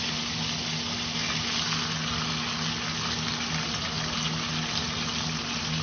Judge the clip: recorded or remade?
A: recorded